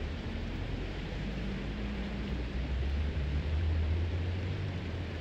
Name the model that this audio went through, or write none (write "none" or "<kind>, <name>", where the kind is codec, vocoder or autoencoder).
vocoder, BigVGAN v2